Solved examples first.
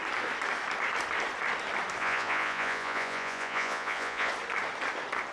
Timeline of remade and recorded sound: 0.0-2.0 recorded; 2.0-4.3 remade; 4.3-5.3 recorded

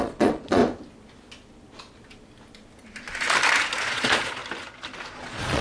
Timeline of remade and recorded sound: 0.0-0.6 remade; 0.6-3.8 recorded; 3.8-4.4 remade; 4.4-5.1 recorded; 5.1-5.6 remade